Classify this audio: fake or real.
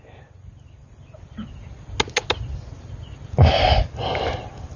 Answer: real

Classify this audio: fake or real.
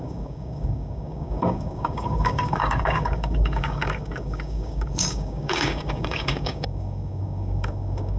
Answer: fake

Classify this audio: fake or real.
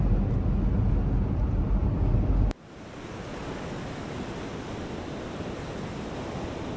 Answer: real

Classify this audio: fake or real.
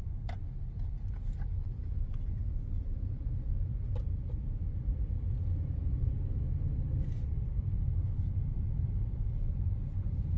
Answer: real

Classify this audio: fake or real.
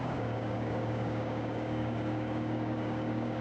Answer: fake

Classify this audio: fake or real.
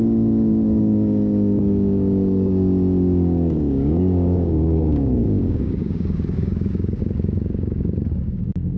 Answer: fake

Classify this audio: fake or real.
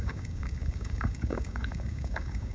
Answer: fake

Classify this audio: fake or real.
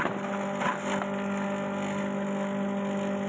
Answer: real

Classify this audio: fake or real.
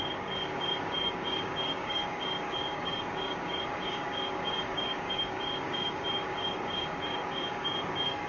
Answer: fake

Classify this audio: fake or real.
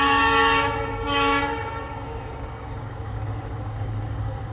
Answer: fake